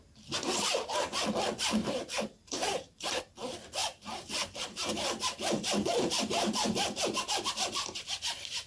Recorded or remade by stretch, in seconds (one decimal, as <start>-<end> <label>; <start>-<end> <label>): 0.0-1.8 recorded; 1.8-3.2 remade; 3.2-3.8 recorded; 3.8-8.7 remade